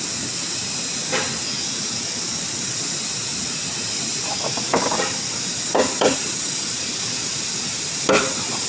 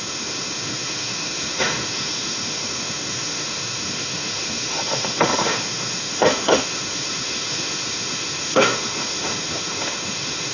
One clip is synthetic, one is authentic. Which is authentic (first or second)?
first